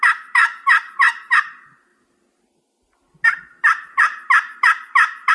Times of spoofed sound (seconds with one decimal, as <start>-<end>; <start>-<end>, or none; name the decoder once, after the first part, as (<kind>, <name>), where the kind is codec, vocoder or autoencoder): none